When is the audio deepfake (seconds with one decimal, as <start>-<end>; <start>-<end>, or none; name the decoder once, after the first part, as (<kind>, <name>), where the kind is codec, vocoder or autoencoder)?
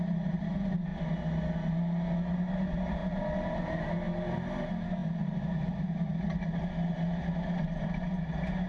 0.0-0.9 (vocoder, BigVGAN v2); 2.3-8.7